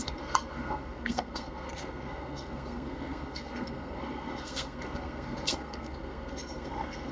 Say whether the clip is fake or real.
fake